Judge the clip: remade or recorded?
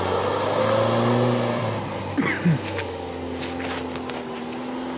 recorded